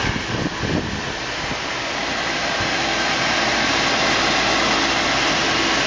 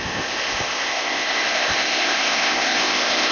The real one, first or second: first